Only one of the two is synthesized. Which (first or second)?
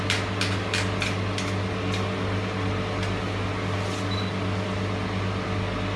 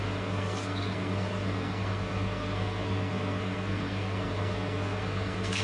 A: second